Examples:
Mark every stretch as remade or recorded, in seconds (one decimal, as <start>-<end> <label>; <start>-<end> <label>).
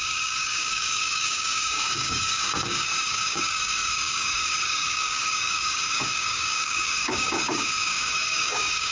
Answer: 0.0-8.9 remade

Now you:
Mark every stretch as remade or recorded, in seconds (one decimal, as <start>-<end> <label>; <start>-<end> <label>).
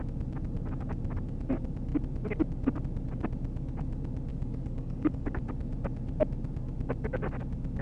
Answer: 0.0-4.3 recorded; 4.3-5.4 remade; 5.4-7.8 recorded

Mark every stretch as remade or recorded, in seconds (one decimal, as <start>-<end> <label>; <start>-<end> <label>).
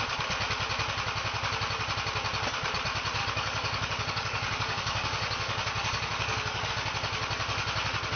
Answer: 0.0-3.2 recorded; 3.2-6.7 remade; 6.7-8.2 recorded